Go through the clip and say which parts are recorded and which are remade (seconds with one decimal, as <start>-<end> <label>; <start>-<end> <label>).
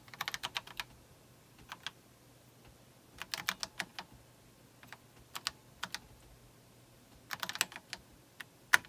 0.0-8.9 recorded